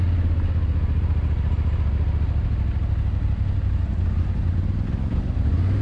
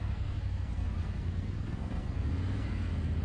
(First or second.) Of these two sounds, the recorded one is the first